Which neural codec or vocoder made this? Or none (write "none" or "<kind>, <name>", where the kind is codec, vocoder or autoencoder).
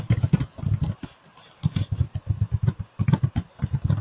none